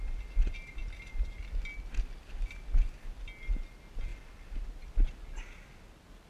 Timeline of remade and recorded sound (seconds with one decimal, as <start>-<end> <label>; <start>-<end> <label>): 0.0-6.3 recorded